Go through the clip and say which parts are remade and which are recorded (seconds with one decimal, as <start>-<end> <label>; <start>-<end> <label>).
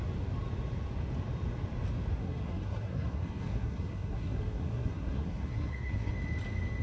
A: 0.0-2.2 recorded; 2.2-6.1 remade; 6.1-6.8 recorded